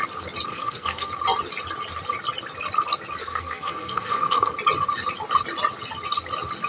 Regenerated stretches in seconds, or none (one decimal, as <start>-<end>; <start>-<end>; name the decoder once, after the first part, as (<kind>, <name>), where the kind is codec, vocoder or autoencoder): 0.5-1.1 (codec, SNAC); 3.2-4.5